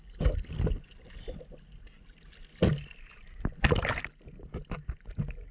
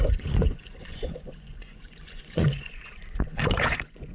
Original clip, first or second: first